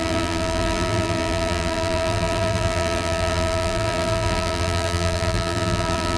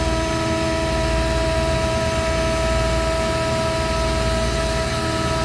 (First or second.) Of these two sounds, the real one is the second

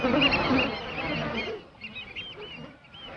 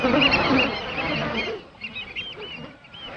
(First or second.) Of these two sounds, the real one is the first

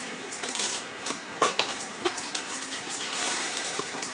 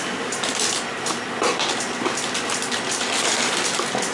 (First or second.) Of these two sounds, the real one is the second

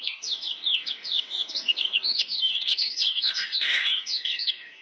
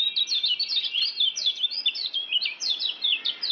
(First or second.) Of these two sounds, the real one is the second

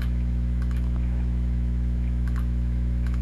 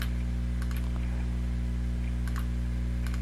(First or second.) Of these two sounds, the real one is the second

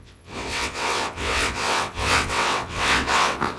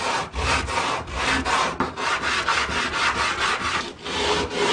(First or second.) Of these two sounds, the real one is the second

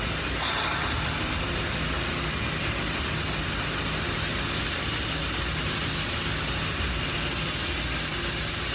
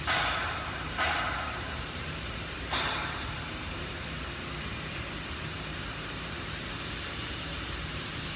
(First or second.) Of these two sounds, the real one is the first